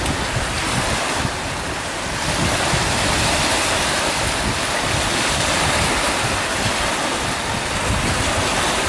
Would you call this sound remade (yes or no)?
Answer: no